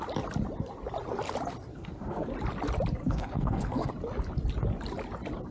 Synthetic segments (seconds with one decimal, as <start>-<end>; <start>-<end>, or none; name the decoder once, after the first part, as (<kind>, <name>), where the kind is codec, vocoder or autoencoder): 1.7-2.3 (codec, SNAC); 3.0-3.9